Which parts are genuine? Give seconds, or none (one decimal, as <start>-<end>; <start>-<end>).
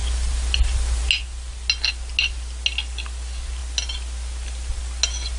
0.0-5.4